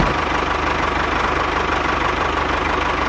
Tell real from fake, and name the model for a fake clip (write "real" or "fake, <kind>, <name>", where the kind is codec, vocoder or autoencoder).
real